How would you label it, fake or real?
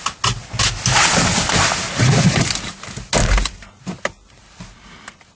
real